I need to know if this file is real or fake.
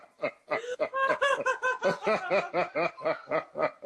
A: real